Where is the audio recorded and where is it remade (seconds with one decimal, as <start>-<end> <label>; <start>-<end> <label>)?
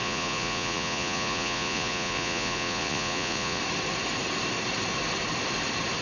0.0-3.6 remade; 3.6-6.0 recorded